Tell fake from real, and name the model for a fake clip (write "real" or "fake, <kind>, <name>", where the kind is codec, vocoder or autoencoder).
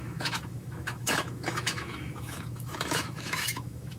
fake, autoencoder, DAC-VAE